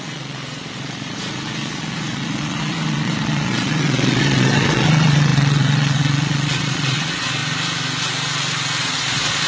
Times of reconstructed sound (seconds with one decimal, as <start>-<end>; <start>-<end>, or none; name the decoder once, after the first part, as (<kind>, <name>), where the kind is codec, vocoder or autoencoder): 0.0-7.4 (vocoder, Vocos); 8.8-9.5